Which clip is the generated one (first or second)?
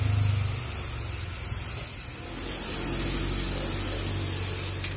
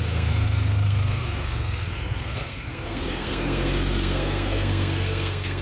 second